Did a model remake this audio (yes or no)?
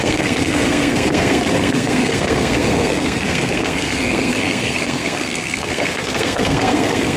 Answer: yes